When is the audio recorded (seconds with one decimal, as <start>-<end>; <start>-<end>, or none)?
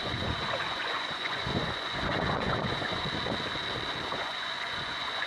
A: 3.0-4.1